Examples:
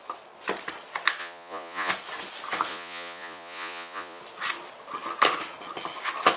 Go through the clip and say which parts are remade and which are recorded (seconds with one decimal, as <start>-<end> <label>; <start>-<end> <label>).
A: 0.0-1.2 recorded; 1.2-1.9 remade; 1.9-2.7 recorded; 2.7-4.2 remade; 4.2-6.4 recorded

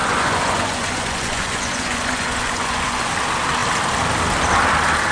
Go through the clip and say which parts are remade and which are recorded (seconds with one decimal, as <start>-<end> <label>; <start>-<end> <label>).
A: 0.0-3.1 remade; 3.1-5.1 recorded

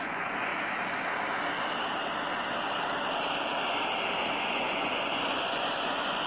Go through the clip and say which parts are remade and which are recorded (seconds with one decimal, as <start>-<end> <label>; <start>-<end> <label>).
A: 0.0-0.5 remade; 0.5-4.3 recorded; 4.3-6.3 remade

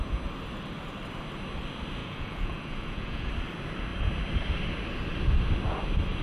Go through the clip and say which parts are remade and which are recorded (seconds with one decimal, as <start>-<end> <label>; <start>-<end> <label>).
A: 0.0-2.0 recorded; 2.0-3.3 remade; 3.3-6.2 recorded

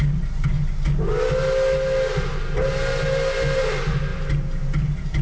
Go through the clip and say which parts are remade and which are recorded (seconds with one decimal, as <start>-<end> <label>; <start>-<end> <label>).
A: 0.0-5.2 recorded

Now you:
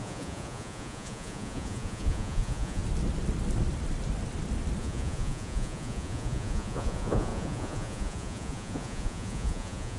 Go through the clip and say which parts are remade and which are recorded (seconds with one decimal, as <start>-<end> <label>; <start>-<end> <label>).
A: 0.0-2.8 remade; 2.8-4.8 recorded; 4.8-10.0 remade

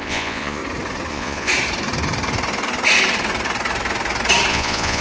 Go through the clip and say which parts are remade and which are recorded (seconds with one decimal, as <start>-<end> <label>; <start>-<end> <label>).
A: 0.0-0.6 remade; 0.6-1.1 recorded; 1.1-1.5 remade; 1.5-4.5 recorded; 4.5-5.0 remade

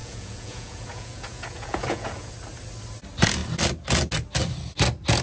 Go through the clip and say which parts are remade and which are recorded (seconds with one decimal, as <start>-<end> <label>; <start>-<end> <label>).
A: 0.0-2.3 remade; 2.3-5.2 recorded